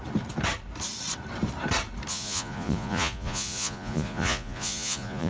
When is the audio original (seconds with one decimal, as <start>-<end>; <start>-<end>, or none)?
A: 0.0-2.1